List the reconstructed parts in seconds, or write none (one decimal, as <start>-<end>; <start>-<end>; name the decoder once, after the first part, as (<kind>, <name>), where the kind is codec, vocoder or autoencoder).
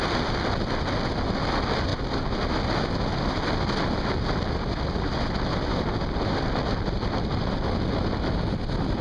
none